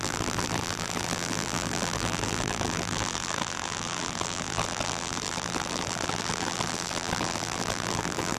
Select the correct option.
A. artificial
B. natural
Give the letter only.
A